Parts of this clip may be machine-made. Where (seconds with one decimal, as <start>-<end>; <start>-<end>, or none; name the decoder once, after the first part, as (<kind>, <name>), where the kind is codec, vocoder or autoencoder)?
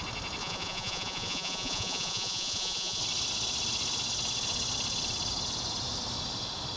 0.4-3.0 (vocoder, Vocos)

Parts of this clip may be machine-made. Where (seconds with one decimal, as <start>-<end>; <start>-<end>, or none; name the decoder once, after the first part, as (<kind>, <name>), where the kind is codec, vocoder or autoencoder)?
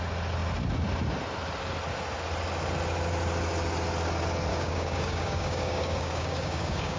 4.5-7.0 (codec, DAC)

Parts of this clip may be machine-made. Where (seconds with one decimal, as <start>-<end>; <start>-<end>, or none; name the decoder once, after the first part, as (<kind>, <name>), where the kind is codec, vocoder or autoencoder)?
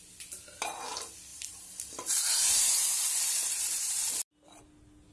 1.3-4.0 (vocoder, BigVGAN v2)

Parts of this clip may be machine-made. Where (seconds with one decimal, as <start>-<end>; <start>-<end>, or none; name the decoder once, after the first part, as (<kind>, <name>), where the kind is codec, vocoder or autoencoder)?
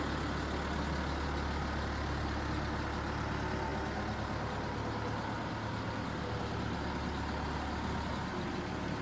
none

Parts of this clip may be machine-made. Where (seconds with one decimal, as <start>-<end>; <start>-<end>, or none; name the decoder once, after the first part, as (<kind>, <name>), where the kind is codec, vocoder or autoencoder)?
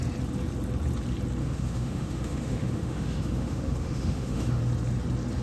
1.4-4.6 (autoencoder, DAC-VAE)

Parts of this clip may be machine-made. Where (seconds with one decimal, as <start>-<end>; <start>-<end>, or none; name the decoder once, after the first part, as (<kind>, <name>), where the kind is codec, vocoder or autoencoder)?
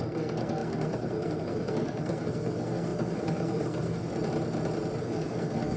0.0-4.1 (codec, SNAC); 5.0-5.8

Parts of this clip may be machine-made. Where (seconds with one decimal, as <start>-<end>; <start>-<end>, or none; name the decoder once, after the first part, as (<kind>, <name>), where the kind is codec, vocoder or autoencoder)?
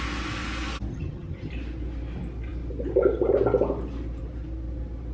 0.9-1.5 (vocoder, HiFi-GAN)